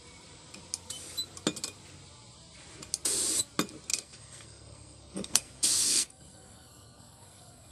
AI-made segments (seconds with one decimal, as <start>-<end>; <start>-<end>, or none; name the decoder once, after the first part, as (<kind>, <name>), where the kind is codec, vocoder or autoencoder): 3.9-7.7 (codec, SNAC)